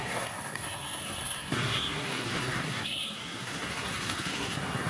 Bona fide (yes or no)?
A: no